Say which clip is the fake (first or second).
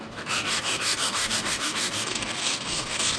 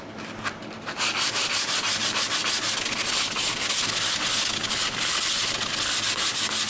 first